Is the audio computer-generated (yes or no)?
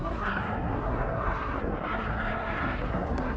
yes